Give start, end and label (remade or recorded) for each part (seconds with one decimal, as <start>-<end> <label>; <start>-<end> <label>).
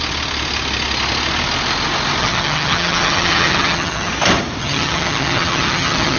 0.0-2.2 recorded; 2.2-4.1 remade; 4.1-4.6 recorded; 4.6-6.2 remade